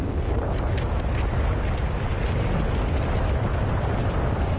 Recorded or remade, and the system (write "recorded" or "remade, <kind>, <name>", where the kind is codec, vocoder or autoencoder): recorded